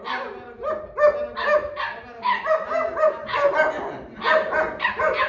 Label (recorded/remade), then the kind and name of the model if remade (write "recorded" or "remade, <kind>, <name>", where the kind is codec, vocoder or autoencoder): recorded